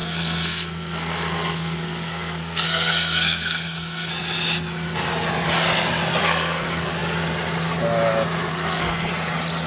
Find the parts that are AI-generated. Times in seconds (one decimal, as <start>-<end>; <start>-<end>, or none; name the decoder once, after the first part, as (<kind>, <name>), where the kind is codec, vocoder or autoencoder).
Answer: 0.0-4.1 (codec, SNAC); 6.2-6.9; 8.5-9.1